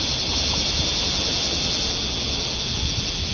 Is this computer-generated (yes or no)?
no